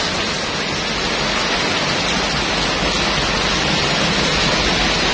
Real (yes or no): yes